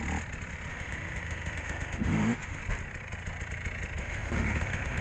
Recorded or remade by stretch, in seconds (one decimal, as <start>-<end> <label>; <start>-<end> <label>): 0.0-0.7 recorded; 0.7-2.6 remade; 2.6-4.0 recorded; 4.0-5.0 remade